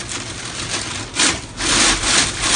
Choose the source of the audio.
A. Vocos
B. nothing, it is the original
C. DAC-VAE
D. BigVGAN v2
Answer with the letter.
B